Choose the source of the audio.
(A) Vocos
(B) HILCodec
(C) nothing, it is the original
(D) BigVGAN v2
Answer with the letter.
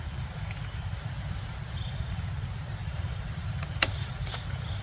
D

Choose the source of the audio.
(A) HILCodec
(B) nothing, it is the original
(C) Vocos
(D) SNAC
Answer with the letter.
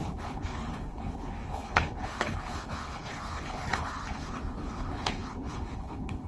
A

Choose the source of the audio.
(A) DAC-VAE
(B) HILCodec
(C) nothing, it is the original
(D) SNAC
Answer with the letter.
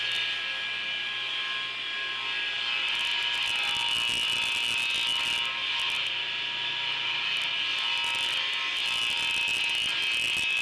C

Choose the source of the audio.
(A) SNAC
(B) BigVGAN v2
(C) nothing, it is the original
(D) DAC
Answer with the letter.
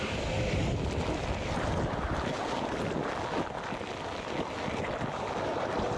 C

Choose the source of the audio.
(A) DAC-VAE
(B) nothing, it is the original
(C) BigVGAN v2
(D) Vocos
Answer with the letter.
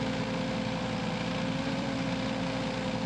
C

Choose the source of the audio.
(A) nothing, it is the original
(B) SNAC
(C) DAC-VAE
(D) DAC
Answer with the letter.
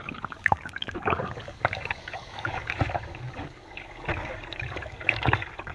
D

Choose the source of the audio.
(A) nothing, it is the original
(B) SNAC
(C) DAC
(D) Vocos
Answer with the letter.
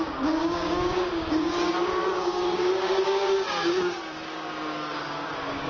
C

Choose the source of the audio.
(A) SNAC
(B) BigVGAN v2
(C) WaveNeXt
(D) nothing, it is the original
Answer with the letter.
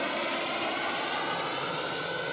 D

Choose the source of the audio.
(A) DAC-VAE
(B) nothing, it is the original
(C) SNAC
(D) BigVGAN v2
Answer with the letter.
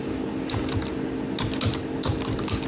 B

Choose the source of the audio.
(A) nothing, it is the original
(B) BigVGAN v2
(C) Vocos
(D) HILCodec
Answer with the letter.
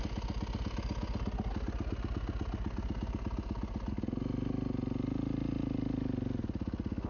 A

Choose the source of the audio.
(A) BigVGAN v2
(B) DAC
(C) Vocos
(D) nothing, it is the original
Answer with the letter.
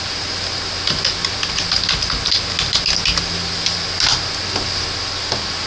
D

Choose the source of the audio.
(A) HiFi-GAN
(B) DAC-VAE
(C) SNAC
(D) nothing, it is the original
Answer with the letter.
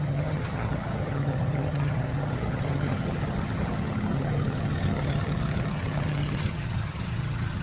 A